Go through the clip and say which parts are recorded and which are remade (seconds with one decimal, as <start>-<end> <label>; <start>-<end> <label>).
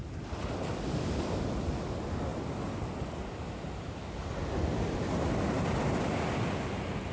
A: 0.0-7.1 recorded